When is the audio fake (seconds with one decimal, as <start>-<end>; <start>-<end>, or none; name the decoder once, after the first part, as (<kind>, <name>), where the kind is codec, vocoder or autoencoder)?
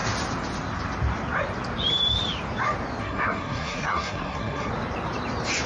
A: 3.0-4.7 (codec, SNAC)